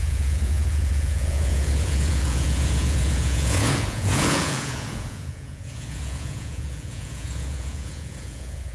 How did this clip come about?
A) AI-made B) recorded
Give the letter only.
A